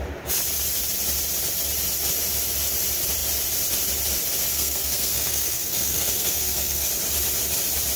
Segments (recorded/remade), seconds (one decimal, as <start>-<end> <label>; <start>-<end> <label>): 0.0-4.5 recorded; 4.5-6.9 remade; 6.9-8.0 recorded